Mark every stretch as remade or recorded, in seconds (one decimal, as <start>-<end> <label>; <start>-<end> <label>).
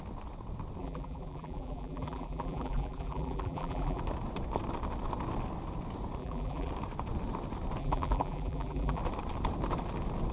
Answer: 0.0-0.8 recorded; 0.8-4.0 remade; 4.0-6.2 recorded; 6.2-6.7 remade; 6.7-7.8 recorded; 7.8-9.0 remade; 9.0-10.3 recorded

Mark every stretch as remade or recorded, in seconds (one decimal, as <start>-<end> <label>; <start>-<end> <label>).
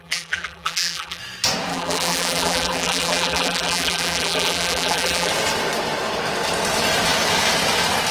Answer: 0.0-1.2 remade; 1.2-1.7 recorded; 1.7-5.3 remade; 5.3-8.1 recorded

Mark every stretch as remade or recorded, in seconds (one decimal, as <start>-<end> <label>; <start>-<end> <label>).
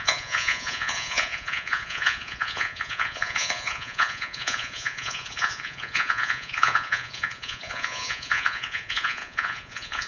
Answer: 0.0-10.1 remade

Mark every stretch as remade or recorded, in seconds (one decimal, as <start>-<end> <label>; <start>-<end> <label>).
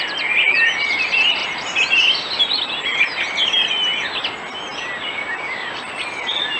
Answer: 0.0-6.6 recorded